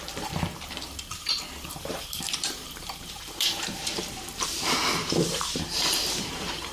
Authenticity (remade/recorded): remade